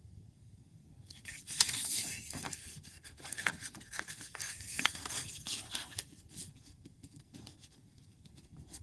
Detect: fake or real fake